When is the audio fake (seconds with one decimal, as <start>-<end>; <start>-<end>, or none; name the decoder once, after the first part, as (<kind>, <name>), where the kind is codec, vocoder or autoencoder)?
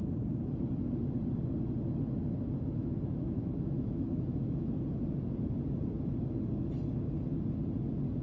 2.8-4.7 (autoencoder, DAC-VAE)